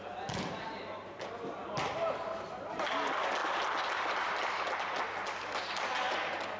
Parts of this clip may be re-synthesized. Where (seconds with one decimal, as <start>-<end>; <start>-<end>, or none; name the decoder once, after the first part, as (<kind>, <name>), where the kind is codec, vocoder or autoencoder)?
none